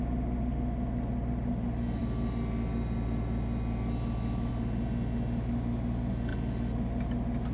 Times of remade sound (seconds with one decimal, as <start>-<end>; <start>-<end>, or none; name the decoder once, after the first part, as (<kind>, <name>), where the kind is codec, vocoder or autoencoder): none